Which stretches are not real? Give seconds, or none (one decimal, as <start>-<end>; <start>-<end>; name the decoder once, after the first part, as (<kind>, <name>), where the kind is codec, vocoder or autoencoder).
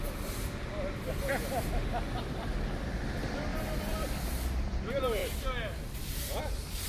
none